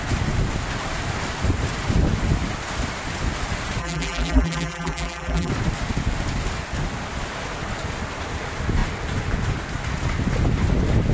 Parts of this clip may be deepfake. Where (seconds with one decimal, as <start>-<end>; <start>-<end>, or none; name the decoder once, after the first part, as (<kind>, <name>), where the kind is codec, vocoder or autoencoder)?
3.8-5.5 (vocoder, BigVGAN v2)